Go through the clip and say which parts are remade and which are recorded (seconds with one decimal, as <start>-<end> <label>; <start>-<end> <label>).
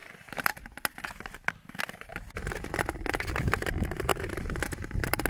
0.0-5.3 recorded